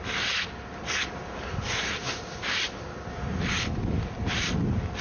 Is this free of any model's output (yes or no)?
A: no